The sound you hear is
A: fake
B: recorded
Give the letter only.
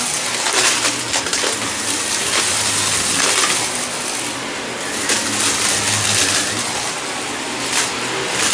B